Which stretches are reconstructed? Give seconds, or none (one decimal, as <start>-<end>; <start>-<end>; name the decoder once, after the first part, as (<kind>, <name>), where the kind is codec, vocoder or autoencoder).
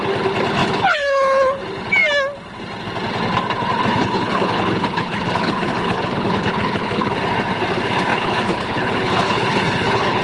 0.6-1.6 (codec, HILCodec); 3.9-7.1; 8.1-10.2